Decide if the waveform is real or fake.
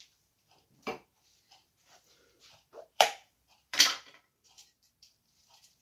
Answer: fake